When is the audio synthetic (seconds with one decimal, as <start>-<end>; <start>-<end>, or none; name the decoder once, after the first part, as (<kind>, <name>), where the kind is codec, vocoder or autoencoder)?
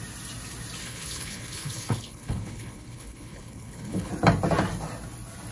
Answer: 0.8-4.1 (codec, HILCodec)